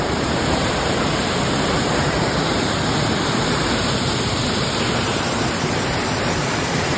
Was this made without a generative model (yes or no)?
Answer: no